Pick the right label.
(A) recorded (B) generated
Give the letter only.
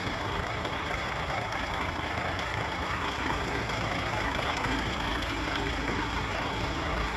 B